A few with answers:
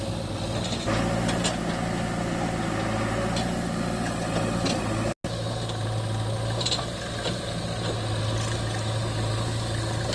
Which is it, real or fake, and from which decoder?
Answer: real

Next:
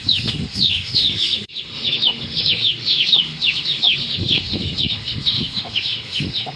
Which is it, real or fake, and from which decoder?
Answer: fake, autoencoder, DAC-VAE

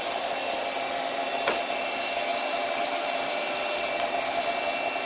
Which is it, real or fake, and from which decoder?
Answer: real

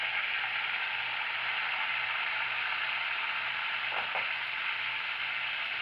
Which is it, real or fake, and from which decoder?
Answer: real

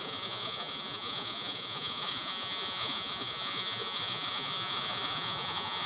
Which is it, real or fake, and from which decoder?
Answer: fake, vocoder, Vocos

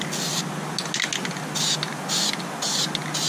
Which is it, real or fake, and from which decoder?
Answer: real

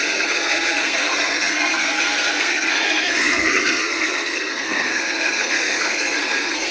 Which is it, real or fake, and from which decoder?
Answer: fake, codec, SNAC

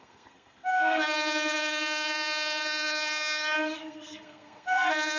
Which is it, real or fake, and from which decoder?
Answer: fake, codec, SNAC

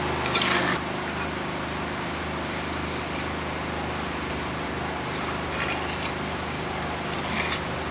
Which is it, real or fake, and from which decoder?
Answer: real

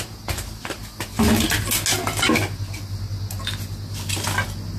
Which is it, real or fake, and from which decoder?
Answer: real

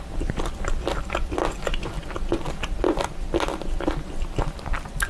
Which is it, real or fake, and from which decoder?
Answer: real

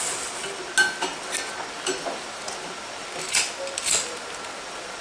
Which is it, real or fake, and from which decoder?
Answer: real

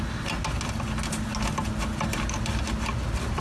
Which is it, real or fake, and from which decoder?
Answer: real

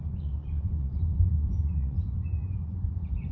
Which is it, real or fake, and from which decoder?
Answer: fake, vocoder, Vocos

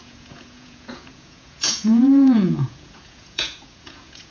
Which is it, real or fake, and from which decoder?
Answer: fake, vocoder, Vocos